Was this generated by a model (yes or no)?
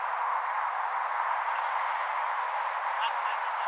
no